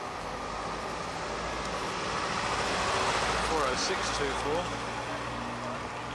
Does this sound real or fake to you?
real